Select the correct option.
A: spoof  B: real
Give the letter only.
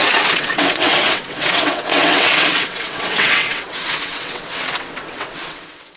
A